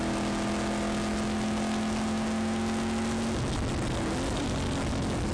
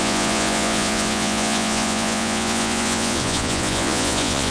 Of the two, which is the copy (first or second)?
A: second